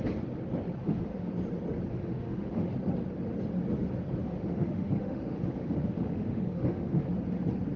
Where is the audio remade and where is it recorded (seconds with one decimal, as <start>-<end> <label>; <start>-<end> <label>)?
0.0-0.8 recorded; 0.8-1.3 remade; 1.3-1.9 recorded; 1.9-2.7 remade; 2.7-4.2 recorded; 4.2-7.1 remade; 7.1-7.8 recorded